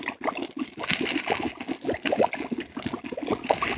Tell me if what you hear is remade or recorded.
recorded